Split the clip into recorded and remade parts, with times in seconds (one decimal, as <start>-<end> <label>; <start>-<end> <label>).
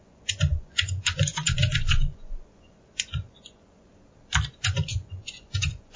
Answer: 0.0-3.9 remade; 3.9-4.5 recorded; 4.5-6.0 remade